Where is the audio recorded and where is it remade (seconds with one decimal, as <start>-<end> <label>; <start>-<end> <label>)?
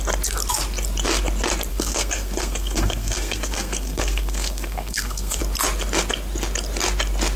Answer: 0.0-1.7 recorded; 1.7-5.4 remade; 5.4-7.4 recorded